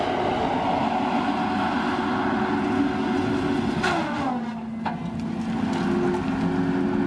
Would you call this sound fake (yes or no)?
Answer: no